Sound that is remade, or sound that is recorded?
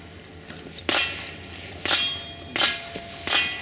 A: recorded